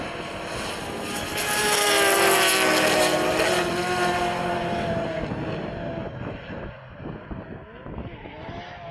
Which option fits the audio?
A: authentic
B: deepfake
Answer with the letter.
A